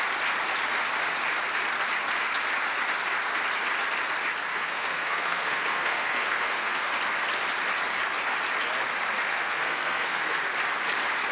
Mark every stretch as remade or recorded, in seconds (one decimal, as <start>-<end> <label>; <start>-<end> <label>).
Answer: 0.0-4.5 recorded; 4.5-6.8 remade; 6.8-9.3 recorded; 9.3-10.4 remade; 10.4-11.3 recorded